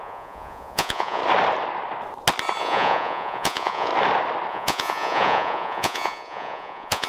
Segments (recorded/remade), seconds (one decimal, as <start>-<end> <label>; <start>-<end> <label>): 0.0-1.2 remade; 1.2-2.6 recorded; 2.6-3.9 remade; 3.9-4.5 recorded; 4.5-7.1 remade